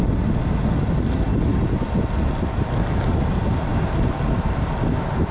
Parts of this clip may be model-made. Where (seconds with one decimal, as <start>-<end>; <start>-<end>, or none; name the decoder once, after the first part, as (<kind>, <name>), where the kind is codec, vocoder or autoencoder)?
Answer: none